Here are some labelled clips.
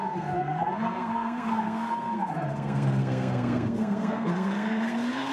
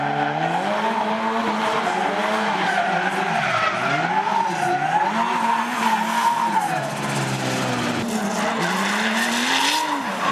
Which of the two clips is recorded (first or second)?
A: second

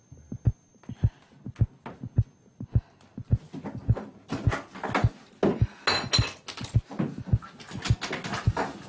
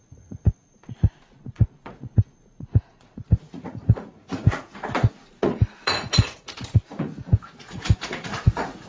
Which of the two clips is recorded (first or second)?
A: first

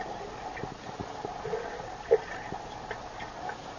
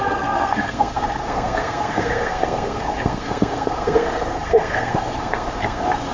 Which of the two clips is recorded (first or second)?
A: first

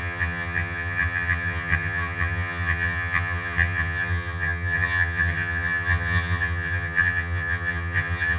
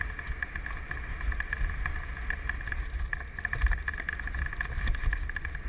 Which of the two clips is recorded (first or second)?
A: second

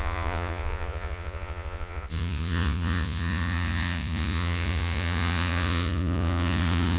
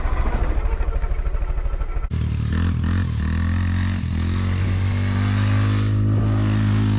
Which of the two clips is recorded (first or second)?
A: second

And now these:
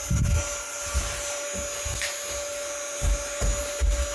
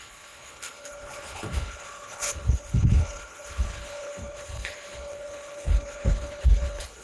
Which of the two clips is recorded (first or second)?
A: first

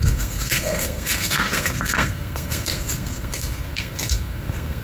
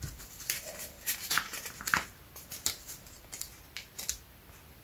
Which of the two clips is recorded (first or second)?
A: second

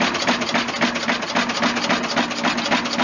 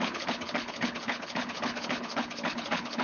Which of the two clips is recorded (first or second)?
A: first